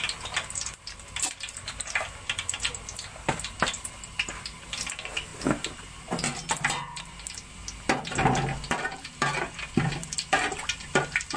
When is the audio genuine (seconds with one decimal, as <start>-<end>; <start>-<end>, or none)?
0.0-11.4